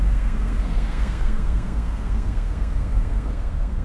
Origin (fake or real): fake